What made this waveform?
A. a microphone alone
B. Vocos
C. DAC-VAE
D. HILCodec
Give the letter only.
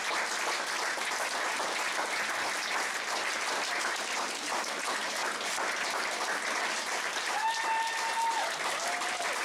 A